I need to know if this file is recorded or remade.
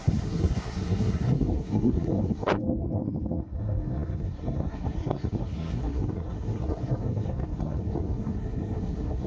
remade